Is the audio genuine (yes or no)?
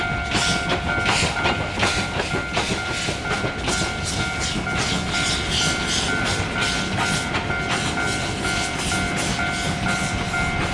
yes